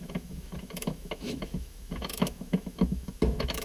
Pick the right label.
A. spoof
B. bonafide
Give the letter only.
A